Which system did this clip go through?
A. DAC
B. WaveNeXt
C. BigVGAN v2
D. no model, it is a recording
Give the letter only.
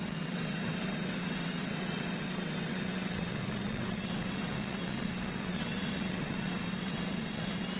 B